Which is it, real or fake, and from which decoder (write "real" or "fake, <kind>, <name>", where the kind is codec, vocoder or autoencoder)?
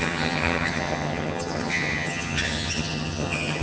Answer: fake, vocoder, HiFi-GAN